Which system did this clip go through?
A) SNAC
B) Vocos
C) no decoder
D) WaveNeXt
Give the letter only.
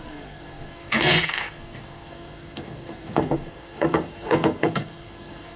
A